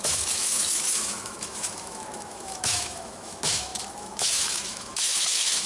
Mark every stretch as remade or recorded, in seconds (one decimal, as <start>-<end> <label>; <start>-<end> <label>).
0.0-5.7 remade